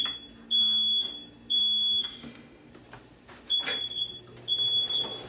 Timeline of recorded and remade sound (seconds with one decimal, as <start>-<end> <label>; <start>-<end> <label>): 0.0-0.6 recorded; 0.6-1.1 remade; 1.1-1.6 recorded; 1.6-2.7 remade; 2.7-5.3 recorded